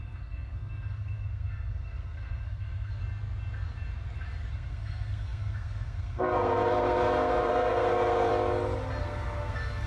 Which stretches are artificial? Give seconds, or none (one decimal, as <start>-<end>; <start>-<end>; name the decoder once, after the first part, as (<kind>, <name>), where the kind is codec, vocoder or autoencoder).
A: 0.0-3.0 (codec, SNAC); 4.5-8.3; 9.0-9.9

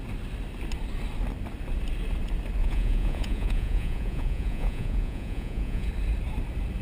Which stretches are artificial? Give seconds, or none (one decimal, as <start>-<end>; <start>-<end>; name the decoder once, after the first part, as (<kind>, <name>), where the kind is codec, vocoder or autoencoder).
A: 2.6-5.9 (vocoder, Vocos)

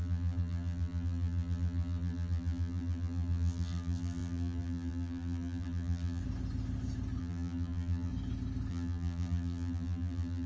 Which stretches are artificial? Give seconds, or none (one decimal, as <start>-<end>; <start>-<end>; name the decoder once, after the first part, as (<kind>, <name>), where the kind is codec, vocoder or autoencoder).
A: 0.0-6.2 (vocoder, BigVGAN v2); 7.2-8.1; 8.7-10.5

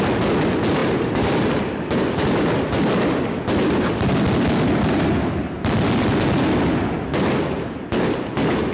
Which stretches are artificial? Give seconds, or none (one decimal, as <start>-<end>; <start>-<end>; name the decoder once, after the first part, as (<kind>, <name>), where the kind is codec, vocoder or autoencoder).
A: none

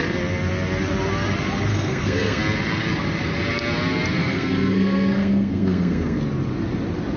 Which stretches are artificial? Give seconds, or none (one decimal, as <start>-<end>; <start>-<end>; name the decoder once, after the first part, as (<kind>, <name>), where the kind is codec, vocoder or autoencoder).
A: 1.7-2.4 (codec, SNAC); 4.2-6.2